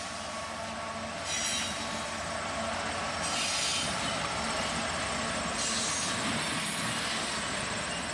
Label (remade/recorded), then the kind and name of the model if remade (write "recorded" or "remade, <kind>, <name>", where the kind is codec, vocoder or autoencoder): recorded